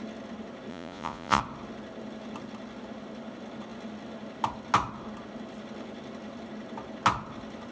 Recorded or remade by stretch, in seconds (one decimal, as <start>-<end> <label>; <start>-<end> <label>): 0.0-0.7 recorded; 0.7-1.4 remade; 1.4-7.7 recorded